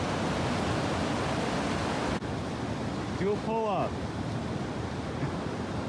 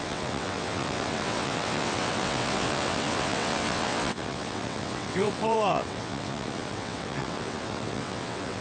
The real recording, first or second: first